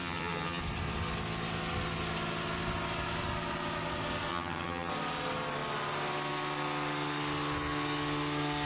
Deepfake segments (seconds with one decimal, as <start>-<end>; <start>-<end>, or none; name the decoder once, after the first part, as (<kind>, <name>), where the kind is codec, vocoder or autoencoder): 0.0-0.6 (vocoder, HiFi-GAN); 4.3-4.9